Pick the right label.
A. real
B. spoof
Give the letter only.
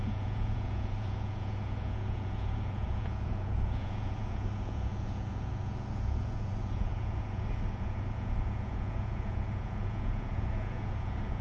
B